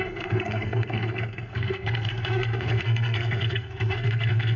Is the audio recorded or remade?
remade